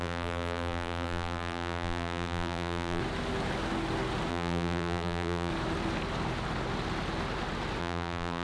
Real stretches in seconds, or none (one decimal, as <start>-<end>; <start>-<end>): 3.0-4.3; 5.5-7.8